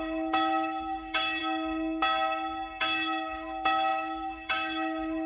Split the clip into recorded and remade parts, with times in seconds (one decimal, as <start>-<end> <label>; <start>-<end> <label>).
0.0-1.4 remade; 1.4-2.8 recorded; 2.8-5.3 remade